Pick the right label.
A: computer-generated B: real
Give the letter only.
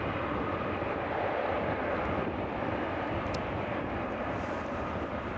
A